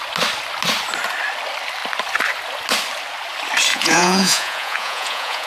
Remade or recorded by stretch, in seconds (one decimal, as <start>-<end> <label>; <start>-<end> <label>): 0.0-3.7 recorded; 3.7-5.5 remade